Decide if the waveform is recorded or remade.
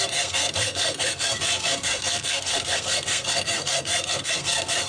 remade